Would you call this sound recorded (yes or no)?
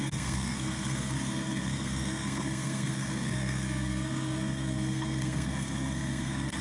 no